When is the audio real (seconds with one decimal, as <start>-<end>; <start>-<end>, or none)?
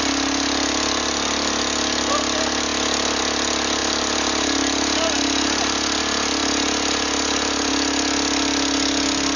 0.0-3.8; 6.0-6.4; 7.7-9.4